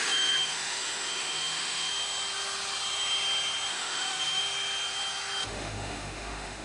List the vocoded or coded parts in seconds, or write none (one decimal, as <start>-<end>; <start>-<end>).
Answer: 0.0-1.9; 3.7-4.4; 5.4-6.6